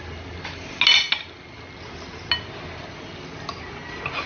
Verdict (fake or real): real